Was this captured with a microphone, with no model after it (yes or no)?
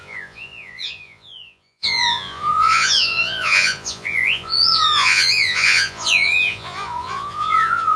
no